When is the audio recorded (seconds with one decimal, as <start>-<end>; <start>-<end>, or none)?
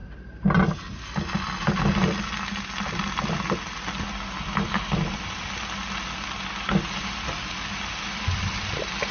0.0-9.1